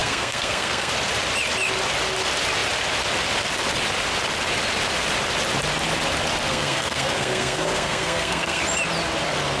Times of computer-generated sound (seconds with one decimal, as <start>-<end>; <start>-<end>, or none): 0.0-0.9; 6.5-8.6